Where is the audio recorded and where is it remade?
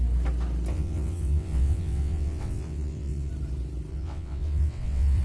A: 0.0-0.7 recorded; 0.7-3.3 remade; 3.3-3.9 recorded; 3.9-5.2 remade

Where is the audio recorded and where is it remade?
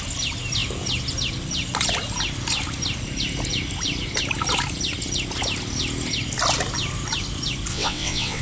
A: 0.0-7.7 recorded; 7.7-8.4 remade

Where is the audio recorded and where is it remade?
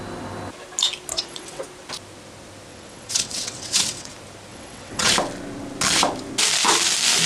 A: 0.0-1.1 recorded; 1.1-1.6 remade; 1.6-2.7 recorded; 2.7-4.1 remade; 4.1-4.5 recorded; 4.5-5.1 remade; 5.1-7.3 recorded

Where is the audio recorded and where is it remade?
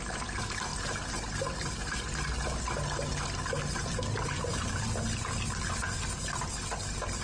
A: 0.0-7.2 recorded